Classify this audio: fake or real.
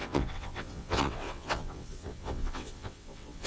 fake